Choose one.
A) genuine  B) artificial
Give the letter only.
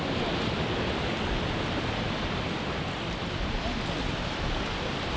A